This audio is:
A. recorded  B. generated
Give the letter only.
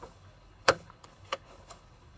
B